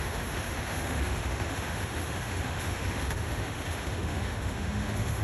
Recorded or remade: remade